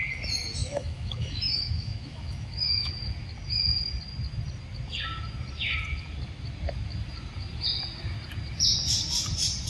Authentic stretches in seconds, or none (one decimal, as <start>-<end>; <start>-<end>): 0.0-0.6; 2.9-9.7